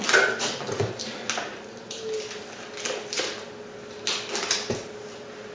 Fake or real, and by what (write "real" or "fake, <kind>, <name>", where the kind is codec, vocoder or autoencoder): real